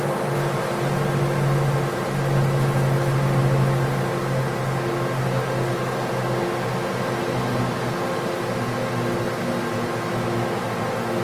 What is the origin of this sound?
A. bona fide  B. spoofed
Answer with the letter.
A